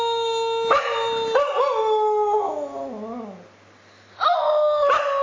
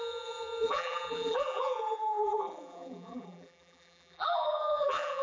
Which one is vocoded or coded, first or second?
second